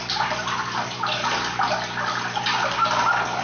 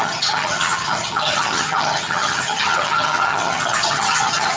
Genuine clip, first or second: first